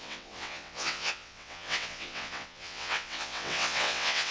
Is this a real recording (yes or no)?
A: no